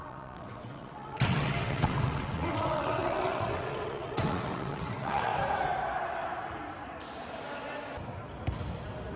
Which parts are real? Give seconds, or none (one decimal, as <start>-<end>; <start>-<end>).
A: 5.3-9.2